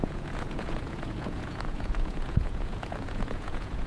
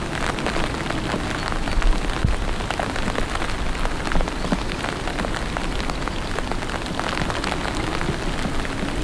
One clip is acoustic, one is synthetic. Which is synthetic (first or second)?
first